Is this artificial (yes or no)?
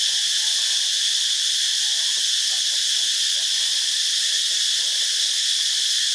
no